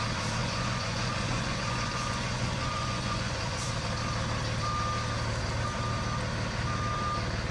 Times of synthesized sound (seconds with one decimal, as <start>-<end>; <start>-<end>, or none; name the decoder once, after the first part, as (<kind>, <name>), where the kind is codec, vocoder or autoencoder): 0.4-3.7 (vocoder, Vocos)